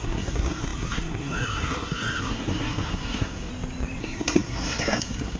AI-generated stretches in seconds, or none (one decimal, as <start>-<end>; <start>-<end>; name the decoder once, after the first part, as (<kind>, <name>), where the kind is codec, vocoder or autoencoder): 0.0-3.5 (codec, SNAC); 4.0-5.4